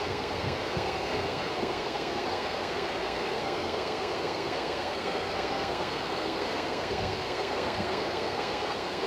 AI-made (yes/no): yes